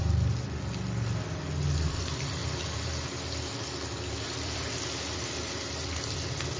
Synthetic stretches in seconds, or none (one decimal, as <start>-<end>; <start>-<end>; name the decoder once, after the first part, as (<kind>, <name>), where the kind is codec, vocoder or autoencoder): 1.9-2.4 (vocoder, BigVGAN v2); 4.1-6.6